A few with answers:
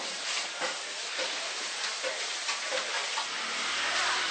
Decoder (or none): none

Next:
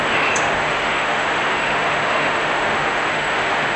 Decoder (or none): autoencoder, DAC-VAE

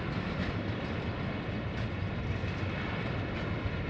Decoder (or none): none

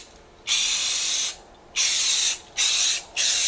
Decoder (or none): none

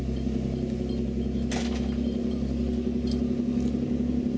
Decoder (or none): none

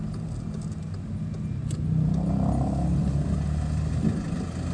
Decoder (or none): none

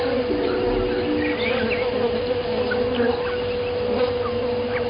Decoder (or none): none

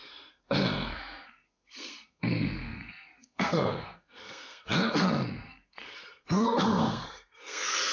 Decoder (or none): codec, SNAC